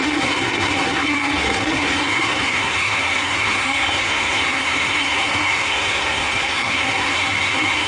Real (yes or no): no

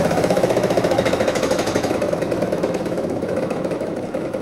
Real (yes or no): no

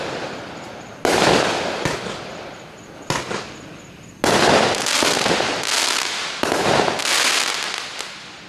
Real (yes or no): yes